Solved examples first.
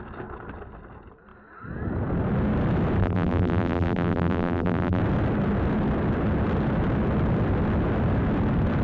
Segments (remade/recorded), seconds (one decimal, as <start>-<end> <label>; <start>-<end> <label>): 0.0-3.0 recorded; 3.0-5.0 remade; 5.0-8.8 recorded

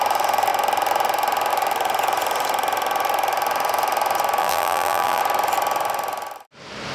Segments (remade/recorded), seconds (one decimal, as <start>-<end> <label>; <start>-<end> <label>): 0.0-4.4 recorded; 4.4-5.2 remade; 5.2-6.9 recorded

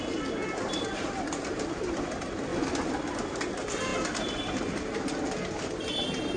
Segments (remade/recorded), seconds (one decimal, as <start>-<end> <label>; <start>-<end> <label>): 0.0-6.4 recorded

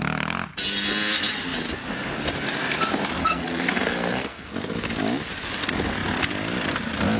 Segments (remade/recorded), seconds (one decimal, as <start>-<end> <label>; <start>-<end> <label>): 0.0-3.2 recorded; 3.2-4.5 remade; 4.5-7.2 recorded

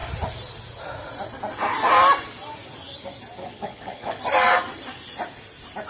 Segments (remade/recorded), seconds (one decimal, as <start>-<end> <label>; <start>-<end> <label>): 0.0-3.4 recorded; 3.4-4.2 remade; 4.2-5.9 recorded

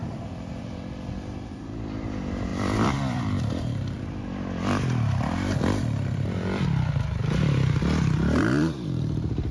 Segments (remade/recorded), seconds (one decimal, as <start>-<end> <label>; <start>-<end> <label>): 0.0-9.5 remade

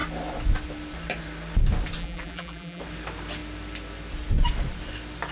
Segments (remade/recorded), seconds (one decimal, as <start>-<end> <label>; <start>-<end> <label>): 0.0-2.0 recorded; 2.0-2.8 remade; 2.8-5.3 recorded

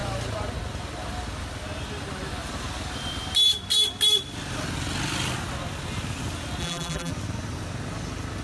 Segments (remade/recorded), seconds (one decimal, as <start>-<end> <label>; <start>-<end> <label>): 0.0-6.6 recorded; 6.6-7.1 remade; 7.1-8.4 recorded